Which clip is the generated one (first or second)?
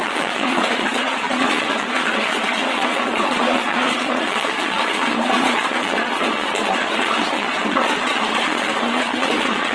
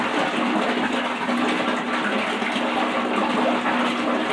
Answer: first